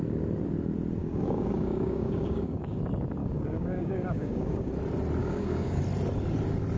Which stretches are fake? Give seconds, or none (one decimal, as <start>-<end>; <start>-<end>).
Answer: 1.0-2.8; 3.2-4.7; 5.2-5.8